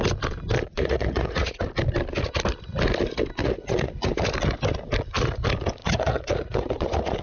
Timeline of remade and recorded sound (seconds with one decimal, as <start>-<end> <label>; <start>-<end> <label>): 0.0-0.7 recorded; 0.7-1.6 remade; 1.6-3.4 recorded; 3.4-4.1 remade; 4.1-5.8 recorded; 5.8-7.2 remade